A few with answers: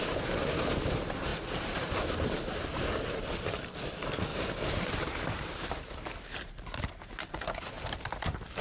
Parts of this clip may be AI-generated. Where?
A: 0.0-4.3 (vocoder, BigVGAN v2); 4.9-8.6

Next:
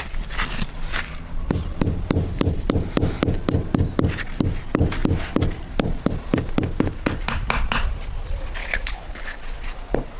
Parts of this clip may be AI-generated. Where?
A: 8.6-9.4 (codec, HILCodec)